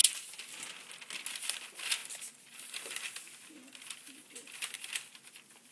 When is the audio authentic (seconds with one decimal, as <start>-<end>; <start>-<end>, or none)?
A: 0.0-5.7